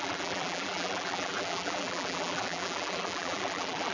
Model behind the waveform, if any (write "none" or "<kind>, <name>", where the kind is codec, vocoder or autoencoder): vocoder, BigVGAN v2